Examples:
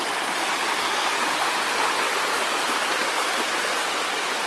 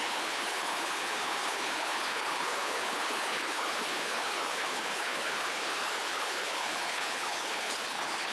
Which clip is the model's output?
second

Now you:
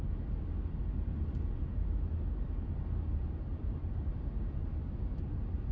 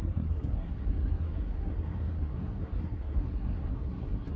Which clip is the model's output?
second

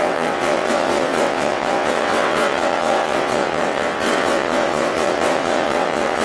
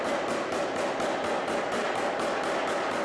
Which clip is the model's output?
first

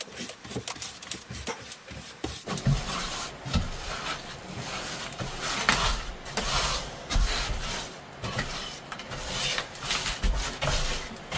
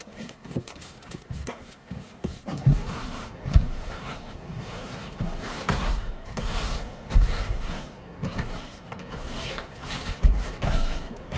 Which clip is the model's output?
second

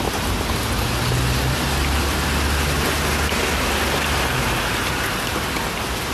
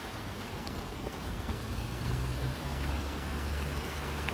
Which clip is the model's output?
second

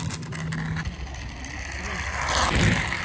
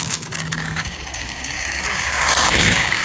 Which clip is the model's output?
second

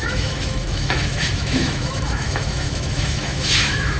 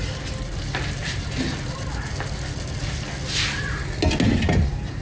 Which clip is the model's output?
first